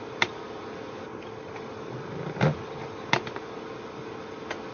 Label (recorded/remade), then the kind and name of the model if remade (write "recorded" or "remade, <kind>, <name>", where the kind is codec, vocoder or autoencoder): recorded